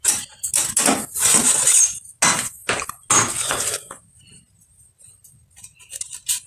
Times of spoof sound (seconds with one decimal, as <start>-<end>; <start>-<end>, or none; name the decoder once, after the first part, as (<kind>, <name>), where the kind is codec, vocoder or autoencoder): none